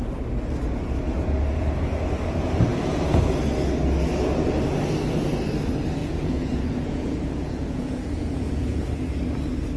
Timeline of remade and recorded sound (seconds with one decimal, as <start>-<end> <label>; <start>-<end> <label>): 0.0-2.7 recorded; 2.7-3.2 remade; 3.2-6.0 recorded; 6.0-8.8 remade; 8.8-9.8 recorded